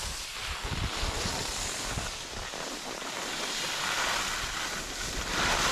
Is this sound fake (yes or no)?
no